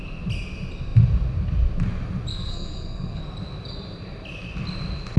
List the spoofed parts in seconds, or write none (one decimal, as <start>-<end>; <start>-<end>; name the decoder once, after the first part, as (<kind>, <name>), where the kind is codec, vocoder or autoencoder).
2.3-3.2 (codec, SNAC)